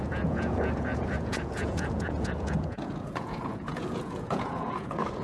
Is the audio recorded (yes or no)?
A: no